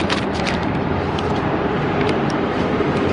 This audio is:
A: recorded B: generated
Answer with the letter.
B